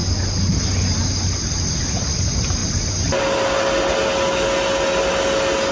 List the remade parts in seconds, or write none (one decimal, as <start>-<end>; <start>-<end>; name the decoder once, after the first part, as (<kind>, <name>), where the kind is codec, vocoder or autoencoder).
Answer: none